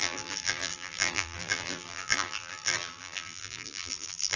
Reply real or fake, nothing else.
fake